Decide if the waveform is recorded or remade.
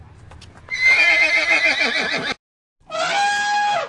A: recorded